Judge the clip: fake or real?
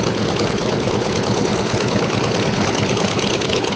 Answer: fake